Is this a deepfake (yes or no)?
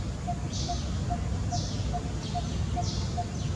no